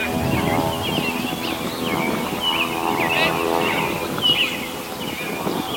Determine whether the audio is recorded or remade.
recorded